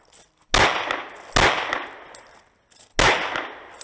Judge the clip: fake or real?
real